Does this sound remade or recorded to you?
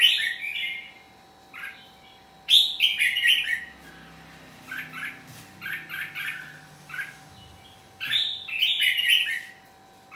recorded